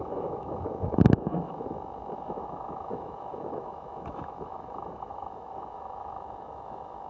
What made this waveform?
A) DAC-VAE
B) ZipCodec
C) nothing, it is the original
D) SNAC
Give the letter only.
A